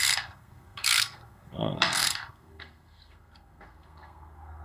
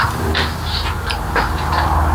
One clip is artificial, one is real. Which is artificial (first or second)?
first